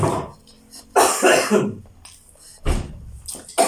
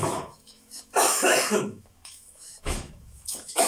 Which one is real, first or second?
first